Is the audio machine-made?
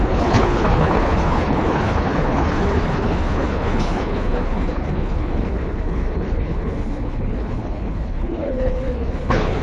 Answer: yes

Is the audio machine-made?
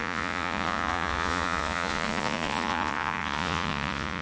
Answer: yes